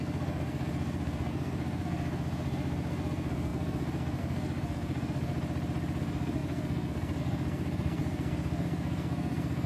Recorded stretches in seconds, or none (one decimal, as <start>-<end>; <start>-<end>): 5.3-6.0